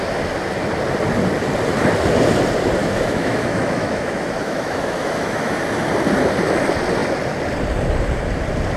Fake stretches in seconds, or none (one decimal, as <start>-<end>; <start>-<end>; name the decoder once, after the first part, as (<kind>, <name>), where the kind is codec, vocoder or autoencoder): 2.8-5.6 (autoencoder, DAC-VAE)